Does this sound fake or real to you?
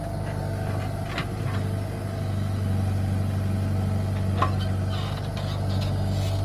real